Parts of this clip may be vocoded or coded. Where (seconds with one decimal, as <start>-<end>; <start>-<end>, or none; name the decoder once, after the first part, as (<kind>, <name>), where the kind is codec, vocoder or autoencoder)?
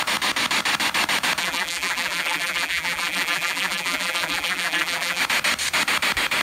1.4-5.2 (vocoder, BigVGAN v2)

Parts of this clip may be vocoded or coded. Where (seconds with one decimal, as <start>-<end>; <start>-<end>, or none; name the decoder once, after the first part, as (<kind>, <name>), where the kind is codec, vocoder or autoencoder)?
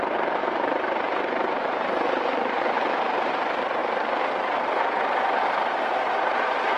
0.0-6.8 (vocoder, BigVGAN v2)